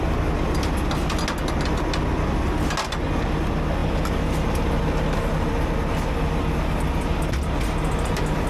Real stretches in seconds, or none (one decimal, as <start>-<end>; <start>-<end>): 0.0-8.5